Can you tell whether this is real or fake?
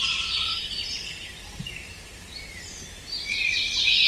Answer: real